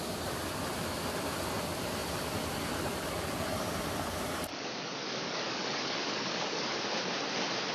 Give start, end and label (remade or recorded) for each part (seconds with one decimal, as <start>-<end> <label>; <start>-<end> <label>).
0.0-4.5 recorded; 4.5-6.8 remade; 6.8-7.7 recorded